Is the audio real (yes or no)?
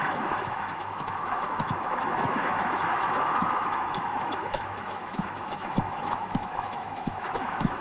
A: no